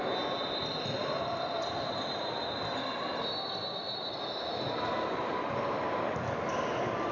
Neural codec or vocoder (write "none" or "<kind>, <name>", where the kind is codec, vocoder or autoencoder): none